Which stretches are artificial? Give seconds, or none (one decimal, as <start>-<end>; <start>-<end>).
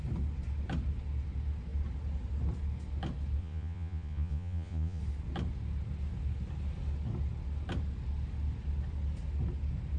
3.4-5.0